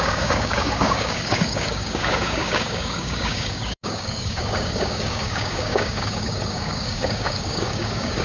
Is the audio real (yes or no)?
no